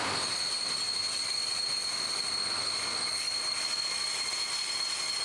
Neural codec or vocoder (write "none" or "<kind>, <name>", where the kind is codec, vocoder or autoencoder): none